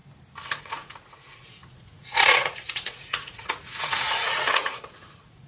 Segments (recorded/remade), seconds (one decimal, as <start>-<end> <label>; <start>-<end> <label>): 0.0-0.6 recorded; 0.6-5.5 remade